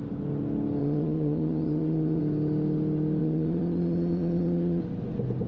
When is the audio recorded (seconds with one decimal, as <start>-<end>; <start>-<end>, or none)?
0.0-0.8; 2.2-3.2; 4.8-5.5